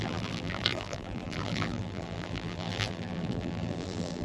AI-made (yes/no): yes